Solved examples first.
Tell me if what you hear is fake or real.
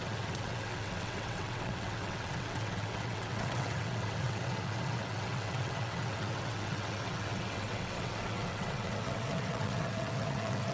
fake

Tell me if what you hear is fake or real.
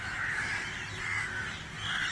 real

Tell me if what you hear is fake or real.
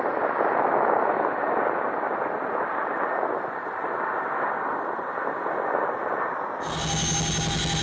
real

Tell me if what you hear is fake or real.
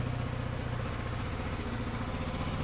real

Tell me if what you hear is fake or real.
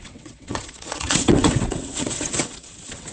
fake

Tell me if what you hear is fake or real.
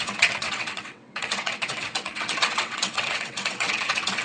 fake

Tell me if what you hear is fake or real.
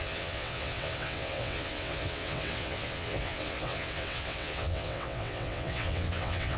fake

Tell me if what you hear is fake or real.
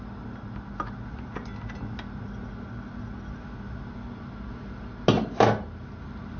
real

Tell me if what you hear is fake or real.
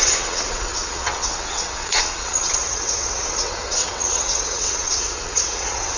fake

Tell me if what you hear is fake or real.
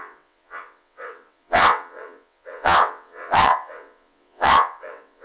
fake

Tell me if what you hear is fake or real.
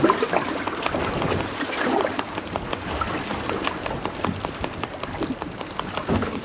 real